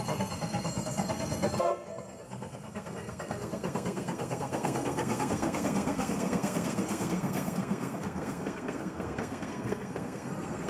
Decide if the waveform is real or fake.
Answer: fake